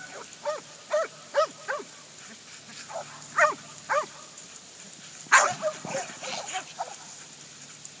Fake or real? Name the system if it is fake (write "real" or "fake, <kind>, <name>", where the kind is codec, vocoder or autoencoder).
real